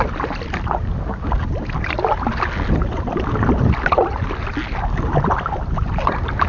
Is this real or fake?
real